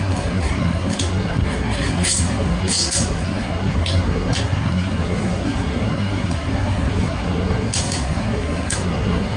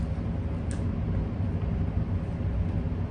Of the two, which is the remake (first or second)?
first